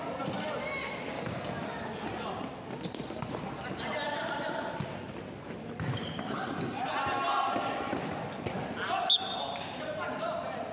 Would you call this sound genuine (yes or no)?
yes